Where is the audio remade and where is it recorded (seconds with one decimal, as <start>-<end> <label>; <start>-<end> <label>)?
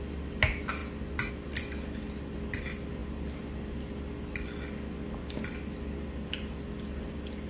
0.0-7.5 recorded